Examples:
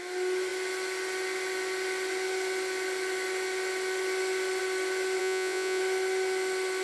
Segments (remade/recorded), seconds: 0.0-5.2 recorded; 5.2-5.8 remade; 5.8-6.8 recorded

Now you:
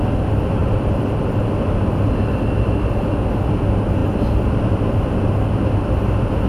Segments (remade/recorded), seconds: 0.0-0.6 recorded; 0.6-1.4 remade; 1.4-6.5 recorded

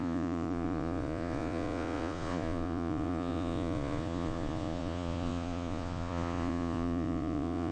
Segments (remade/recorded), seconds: 0.0-7.7 remade

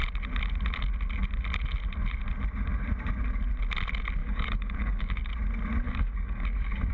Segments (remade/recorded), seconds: 0.0-4.2 recorded; 4.2-5.3 remade; 5.3-5.8 recorded; 5.8-6.9 remade

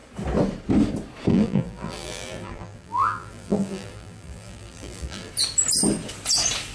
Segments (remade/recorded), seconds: 0.0-1.3 recorded; 1.3-5.3 remade; 5.3-6.7 recorded

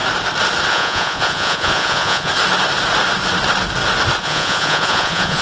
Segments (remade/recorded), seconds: 0.0-0.7 recorded; 0.7-2.3 remade; 2.3-4.2 recorded; 4.2-5.4 remade